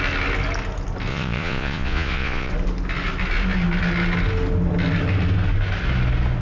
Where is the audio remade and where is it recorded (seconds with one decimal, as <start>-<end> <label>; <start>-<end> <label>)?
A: 0.0-1.1 recorded; 1.1-2.5 remade; 2.5-6.4 recorded